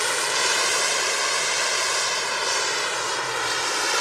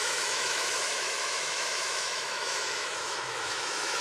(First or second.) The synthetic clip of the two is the second